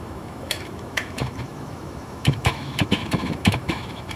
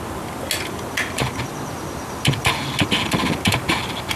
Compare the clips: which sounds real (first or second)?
second